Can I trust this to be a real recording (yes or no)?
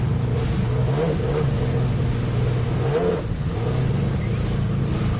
yes